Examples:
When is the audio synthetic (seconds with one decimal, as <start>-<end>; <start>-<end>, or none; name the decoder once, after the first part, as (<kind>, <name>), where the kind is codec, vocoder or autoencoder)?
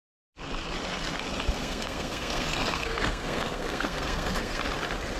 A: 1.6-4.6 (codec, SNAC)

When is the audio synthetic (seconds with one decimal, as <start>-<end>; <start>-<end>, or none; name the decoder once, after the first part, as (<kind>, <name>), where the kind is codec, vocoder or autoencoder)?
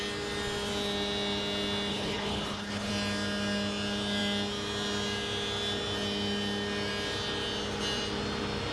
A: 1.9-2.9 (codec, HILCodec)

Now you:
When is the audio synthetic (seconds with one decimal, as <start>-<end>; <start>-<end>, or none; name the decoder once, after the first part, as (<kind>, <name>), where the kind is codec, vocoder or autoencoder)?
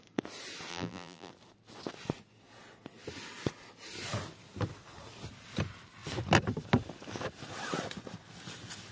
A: 0.7-1.3 (vocoder, BigVGAN v2)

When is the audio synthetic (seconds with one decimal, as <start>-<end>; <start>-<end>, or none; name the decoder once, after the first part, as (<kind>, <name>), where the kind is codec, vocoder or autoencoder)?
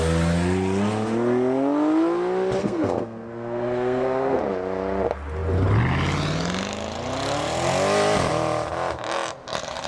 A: 2.6-4.4 (codec, SNAC)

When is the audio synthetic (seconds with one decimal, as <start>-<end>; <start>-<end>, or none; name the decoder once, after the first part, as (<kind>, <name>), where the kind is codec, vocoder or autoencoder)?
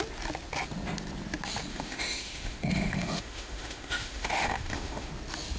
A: 1.7-5.1 (autoencoder, DAC-VAE)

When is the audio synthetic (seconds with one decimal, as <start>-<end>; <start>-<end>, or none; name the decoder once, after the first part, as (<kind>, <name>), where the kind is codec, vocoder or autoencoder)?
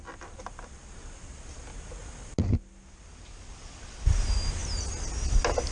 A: none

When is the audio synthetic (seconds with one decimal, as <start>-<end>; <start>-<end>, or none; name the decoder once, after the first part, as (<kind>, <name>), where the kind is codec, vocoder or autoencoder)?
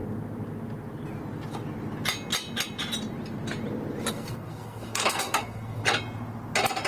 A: 4.1-5.8 (codec, SNAC)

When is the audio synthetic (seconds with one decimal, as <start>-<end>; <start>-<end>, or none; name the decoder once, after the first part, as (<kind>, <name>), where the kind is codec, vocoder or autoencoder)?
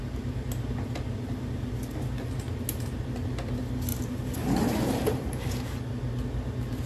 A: 3.9-5.8 (vocoder, BigVGAN v2)